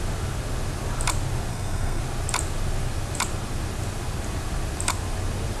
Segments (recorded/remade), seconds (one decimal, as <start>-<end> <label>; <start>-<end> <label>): 0.0-1.5 recorded; 1.5-2.0 remade; 2.0-5.6 recorded